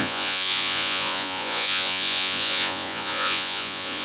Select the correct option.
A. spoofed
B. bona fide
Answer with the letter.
A